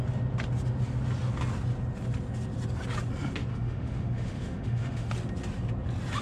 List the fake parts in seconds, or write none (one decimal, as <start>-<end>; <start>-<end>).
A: 3.5-5.1